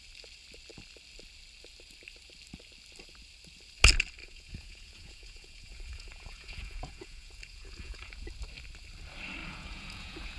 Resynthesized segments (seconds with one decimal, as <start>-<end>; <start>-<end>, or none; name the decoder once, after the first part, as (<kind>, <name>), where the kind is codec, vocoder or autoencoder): 4.2-8.3 (vocoder, Vocos); 9.4-10.4